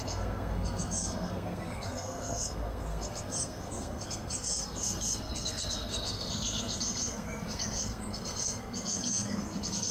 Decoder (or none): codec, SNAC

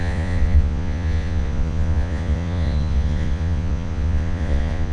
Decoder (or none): vocoder, Vocos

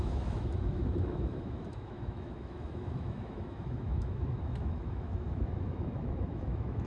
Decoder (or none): autoencoder, DAC-VAE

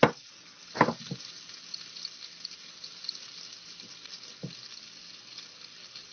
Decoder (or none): none